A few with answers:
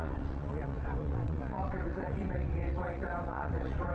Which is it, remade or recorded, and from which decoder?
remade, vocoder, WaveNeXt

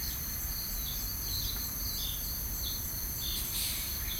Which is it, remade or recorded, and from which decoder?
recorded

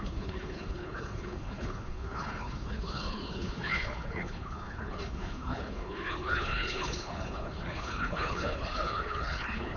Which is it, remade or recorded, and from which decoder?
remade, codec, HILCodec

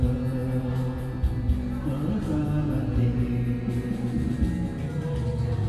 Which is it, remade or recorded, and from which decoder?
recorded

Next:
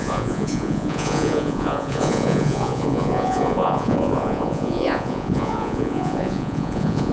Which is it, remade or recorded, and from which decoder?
remade, vocoder, Vocos